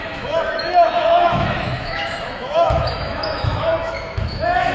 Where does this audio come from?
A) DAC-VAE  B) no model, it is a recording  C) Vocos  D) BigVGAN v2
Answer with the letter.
A